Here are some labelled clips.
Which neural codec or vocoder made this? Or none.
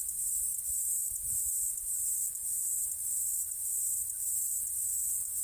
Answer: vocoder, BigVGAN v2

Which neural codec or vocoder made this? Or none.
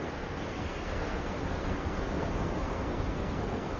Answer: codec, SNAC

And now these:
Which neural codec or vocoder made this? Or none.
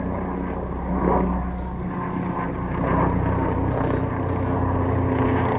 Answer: none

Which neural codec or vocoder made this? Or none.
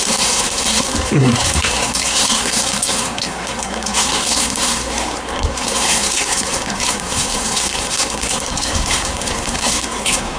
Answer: codec, SNAC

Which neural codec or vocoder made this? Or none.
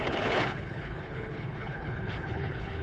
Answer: codec, HILCodec